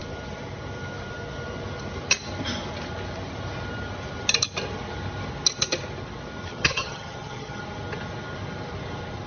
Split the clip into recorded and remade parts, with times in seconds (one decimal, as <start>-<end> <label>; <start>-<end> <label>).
0.0-6.5 recorded; 6.5-7.6 remade; 7.6-9.3 recorded